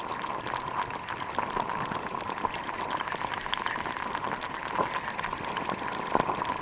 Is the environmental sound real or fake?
real